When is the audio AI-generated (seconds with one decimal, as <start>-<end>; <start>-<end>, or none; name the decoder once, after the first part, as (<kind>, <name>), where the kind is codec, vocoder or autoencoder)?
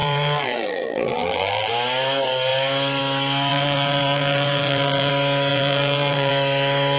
0.0-1.7 (vocoder, BigVGAN v2); 3.5-5.1; 5.5-6.3